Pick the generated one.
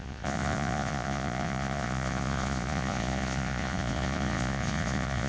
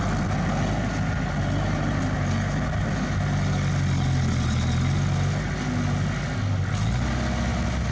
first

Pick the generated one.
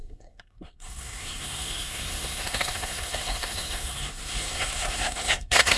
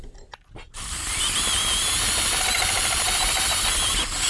first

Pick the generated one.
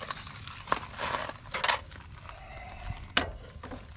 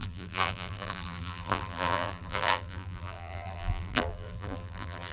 second